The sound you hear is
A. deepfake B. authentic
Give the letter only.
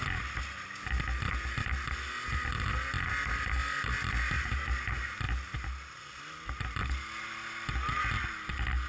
B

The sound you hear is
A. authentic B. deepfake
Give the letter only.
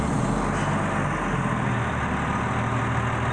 A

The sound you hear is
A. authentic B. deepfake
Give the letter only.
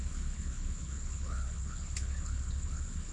B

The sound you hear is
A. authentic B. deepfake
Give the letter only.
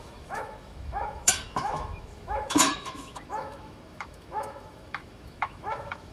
B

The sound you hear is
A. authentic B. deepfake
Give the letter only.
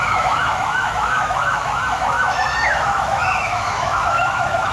B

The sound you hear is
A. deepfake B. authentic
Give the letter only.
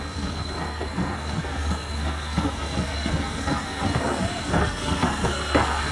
A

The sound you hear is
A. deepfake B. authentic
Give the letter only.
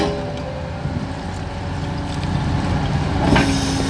B